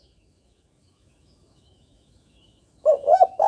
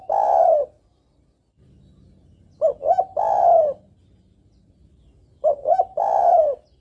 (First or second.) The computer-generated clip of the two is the first